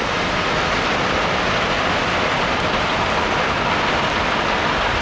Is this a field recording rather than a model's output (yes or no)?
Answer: no